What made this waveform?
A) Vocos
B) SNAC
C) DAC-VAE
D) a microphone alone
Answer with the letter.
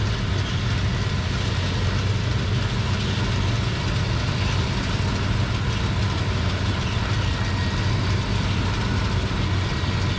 D